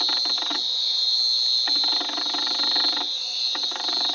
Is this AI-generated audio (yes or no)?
no